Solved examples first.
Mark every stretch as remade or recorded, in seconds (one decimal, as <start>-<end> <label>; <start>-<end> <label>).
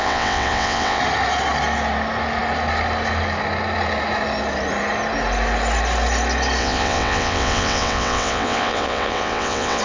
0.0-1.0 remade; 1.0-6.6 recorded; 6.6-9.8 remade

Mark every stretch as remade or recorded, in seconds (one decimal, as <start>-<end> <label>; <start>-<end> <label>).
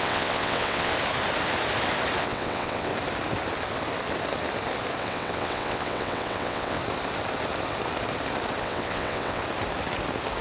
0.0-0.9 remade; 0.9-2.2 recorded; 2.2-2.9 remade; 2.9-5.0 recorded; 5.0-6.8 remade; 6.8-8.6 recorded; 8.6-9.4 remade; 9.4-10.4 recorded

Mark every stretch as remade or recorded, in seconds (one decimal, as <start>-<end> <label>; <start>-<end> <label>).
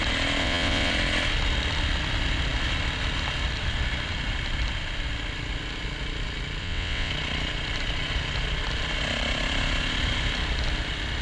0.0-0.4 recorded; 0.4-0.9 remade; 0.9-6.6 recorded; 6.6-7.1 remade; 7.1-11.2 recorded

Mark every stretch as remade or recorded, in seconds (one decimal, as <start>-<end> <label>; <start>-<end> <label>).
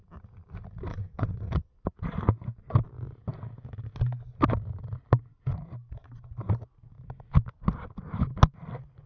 0.0-0.9 recorded; 0.9-1.7 remade; 1.7-9.1 recorded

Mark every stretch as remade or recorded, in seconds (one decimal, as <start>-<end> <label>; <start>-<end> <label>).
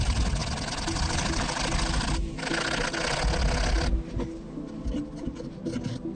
0.0-6.2 recorded